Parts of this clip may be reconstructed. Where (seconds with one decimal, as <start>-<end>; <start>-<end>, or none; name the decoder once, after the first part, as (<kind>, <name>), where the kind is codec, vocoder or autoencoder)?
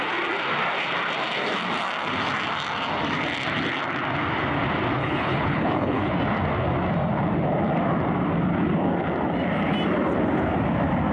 5.0-6.1 (codec, HILCodec)